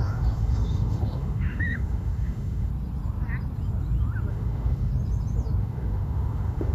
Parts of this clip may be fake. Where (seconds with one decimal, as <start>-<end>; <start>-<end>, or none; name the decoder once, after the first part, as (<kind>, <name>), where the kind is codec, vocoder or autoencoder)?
0.0-2.7 (autoencoder, DAC-VAE); 4.3-4.9; 5.6-6.7